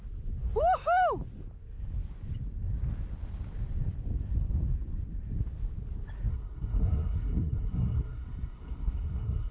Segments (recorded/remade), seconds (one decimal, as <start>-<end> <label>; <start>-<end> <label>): 0.0-6.3 recorded; 6.3-9.5 remade